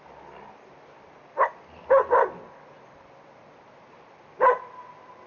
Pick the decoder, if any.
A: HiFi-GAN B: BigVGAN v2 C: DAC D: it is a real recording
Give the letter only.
B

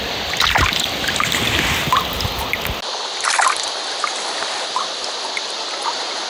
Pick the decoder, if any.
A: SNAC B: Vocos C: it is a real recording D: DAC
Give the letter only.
C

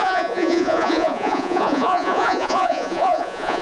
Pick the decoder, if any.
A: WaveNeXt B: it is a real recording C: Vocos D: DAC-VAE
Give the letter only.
C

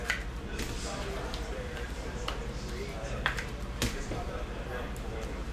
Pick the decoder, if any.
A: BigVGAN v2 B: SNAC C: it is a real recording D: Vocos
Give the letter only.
A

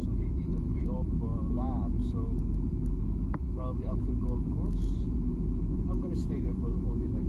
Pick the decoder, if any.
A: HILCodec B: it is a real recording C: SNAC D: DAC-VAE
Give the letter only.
D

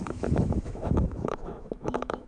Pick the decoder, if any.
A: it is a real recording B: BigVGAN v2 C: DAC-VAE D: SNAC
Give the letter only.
C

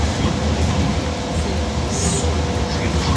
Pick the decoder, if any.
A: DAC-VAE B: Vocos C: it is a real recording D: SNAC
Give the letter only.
C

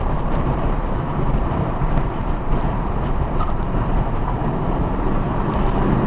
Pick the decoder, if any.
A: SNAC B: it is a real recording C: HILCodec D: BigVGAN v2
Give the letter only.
D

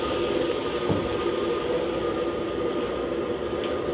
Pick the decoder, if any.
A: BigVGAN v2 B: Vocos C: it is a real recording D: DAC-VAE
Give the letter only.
C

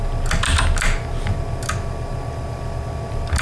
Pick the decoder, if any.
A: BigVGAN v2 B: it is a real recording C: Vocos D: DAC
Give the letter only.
B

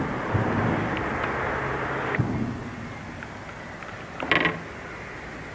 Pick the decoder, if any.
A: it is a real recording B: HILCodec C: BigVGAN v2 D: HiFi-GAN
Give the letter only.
A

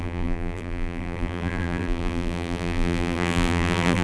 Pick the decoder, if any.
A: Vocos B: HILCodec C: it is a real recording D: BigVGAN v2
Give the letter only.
D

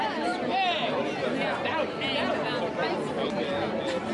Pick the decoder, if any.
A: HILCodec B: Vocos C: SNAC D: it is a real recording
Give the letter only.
D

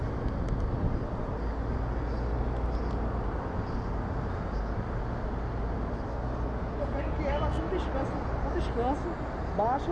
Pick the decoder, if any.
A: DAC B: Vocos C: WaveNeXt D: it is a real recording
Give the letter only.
D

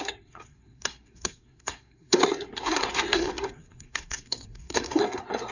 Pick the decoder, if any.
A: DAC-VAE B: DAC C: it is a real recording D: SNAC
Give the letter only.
D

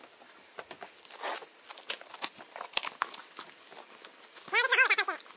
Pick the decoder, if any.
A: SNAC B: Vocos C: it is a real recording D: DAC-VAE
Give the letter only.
C